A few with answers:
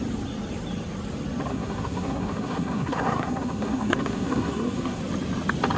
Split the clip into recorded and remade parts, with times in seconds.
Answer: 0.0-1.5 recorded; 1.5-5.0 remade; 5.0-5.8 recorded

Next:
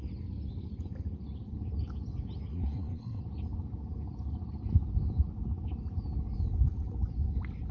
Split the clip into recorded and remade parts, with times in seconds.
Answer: 0.0-2.5 recorded; 2.5-3.2 remade; 3.2-7.7 recorded

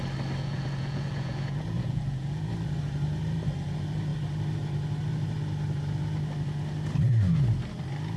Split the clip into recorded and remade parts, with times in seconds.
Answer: 0.0-0.4 recorded; 0.4-2.5 remade; 2.5-8.2 recorded

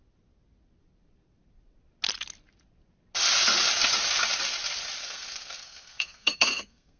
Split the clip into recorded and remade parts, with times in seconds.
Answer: 0.0-5.0 recorded; 5.0-7.0 remade

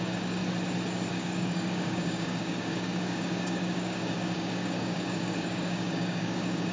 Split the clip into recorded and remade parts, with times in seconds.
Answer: 0.0-0.4 remade; 0.4-1.1 recorded; 1.1-6.7 remade